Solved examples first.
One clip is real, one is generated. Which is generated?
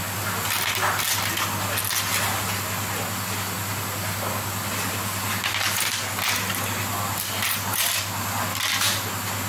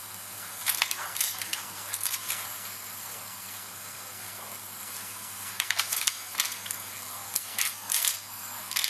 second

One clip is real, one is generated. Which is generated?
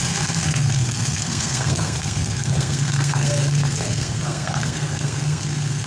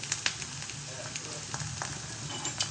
first